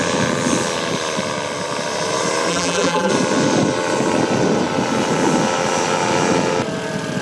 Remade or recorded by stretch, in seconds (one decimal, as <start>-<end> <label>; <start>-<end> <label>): 0.0-2.5 recorded; 2.5-3.1 remade; 3.1-7.2 recorded